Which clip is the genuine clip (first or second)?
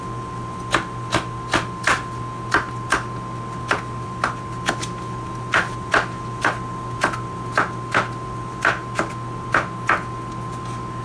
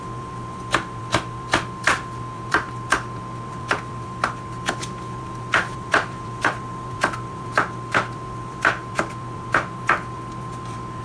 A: first